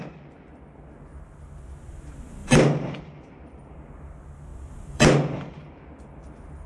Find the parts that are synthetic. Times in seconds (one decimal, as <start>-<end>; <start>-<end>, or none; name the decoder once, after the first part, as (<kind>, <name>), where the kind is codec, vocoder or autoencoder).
2.4-3.8 (vocoder, BigVGAN v2); 4.5-5.8